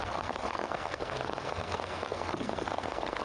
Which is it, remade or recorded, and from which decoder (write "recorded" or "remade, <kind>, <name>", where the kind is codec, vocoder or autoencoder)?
remade, codec, SNAC